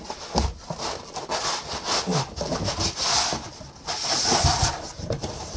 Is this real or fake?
real